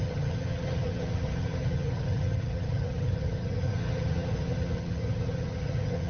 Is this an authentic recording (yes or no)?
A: no